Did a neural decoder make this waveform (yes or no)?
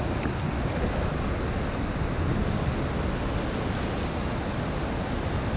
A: no